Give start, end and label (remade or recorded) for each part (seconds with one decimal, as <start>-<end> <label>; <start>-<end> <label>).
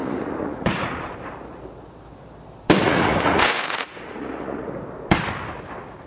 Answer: 0.0-1.3 remade; 1.3-2.8 recorded; 2.8-4.7 remade; 4.7-6.1 recorded